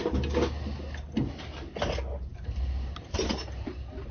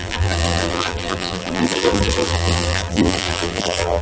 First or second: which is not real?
second